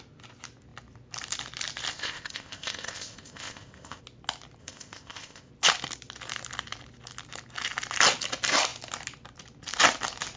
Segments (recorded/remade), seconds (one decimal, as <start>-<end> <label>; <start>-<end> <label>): 0.0-1.9 recorded; 1.9-4.0 remade; 4.0-4.6 recorded; 4.6-5.5 remade; 5.5-10.4 recorded